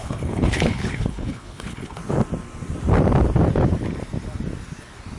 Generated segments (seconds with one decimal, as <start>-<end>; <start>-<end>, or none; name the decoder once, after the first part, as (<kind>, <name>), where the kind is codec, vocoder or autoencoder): 0.0-2.0 (codec, HILCodec)